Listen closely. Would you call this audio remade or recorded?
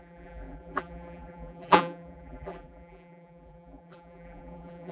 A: remade